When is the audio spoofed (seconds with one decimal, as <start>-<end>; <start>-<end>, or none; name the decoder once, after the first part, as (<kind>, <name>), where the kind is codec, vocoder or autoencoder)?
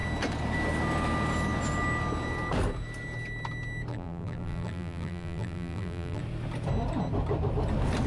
3.9-6.2 (vocoder, BigVGAN v2)